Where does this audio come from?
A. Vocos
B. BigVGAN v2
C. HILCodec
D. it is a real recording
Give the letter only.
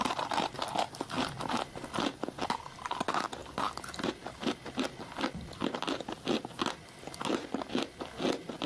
D